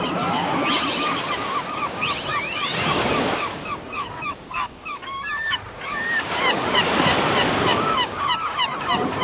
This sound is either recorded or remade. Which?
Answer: remade